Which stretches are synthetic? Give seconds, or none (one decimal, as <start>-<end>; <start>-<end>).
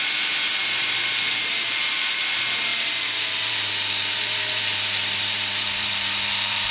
0.0-6.7